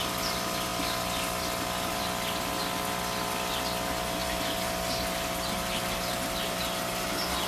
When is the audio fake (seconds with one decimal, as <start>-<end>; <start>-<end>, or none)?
none